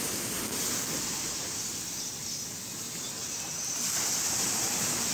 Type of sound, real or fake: real